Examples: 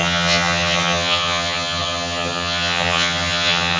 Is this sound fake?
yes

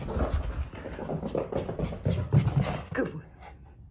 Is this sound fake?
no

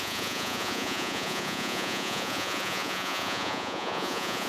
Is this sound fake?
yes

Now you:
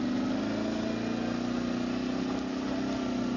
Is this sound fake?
no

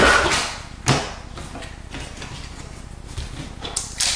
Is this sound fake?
no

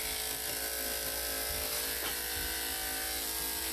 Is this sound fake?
no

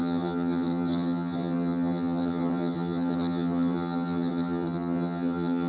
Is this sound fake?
yes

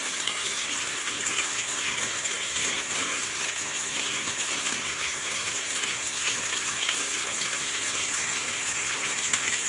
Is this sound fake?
yes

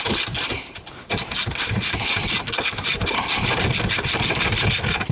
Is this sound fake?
no